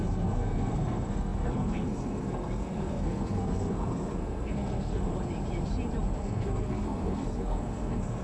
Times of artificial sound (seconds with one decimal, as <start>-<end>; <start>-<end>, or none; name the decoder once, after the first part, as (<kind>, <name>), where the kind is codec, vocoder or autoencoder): 0.0-5.1 (codec, SNAC); 6.2-8.2